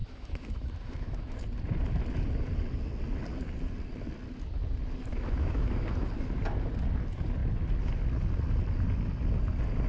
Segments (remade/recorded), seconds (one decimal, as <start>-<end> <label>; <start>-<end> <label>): 0.0-1.4 remade; 1.4-5.1 recorded; 5.1-6.1 remade; 6.1-9.9 recorded